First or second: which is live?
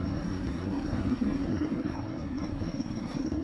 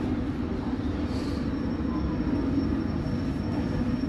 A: second